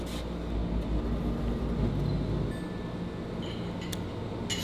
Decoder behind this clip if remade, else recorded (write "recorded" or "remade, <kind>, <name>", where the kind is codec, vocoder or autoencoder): recorded